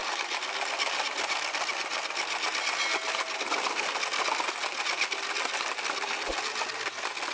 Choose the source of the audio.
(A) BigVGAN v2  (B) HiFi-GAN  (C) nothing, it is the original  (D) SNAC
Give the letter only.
C